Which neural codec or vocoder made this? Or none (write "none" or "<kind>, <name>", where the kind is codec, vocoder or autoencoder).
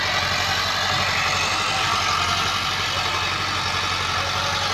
none